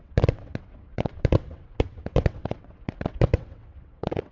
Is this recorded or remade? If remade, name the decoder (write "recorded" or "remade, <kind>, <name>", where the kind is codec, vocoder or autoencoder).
remade, vocoder, WaveNeXt